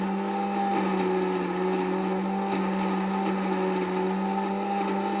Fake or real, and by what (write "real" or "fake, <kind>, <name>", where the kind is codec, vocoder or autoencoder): real